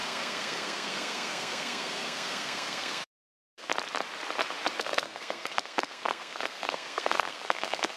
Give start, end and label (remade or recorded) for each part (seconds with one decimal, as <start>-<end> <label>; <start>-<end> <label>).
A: 0.0-3.7 remade; 3.7-4.8 recorded; 4.8-8.0 remade